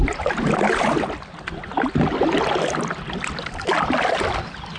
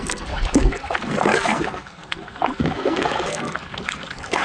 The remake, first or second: second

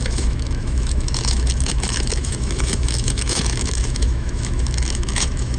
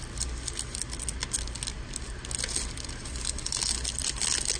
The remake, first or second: first